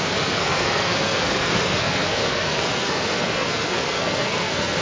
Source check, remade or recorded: remade